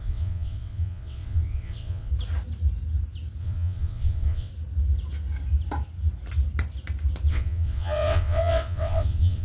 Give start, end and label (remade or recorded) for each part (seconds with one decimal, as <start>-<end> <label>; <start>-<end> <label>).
0.0-2.1 remade; 2.1-3.4 recorded; 3.4-4.5 remade; 4.5-7.3 recorded; 7.3-9.4 remade